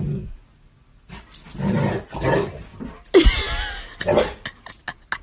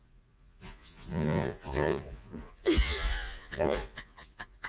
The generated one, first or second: second